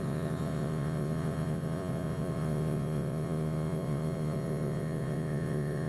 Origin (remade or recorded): remade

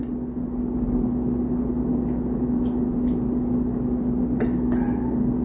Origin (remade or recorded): recorded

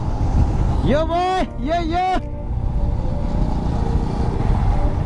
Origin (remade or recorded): recorded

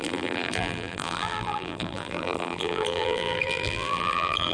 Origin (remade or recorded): remade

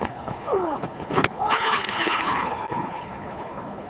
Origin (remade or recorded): remade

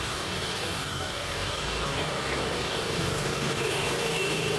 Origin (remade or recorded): remade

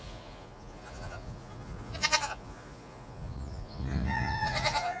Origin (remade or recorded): remade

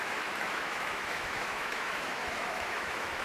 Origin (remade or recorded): remade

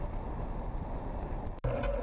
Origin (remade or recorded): recorded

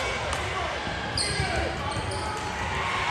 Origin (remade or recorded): recorded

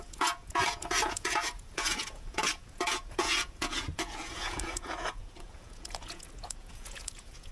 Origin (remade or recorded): remade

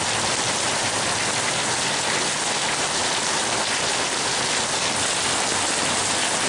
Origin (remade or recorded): recorded